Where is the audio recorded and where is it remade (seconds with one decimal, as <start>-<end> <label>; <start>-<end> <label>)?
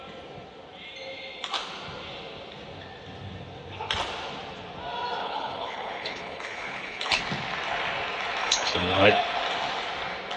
0.0-5.2 recorded; 5.2-7.2 remade; 7.2-8.4 recorded; 8.4-9.2 remade; 9.2-10.4 recorded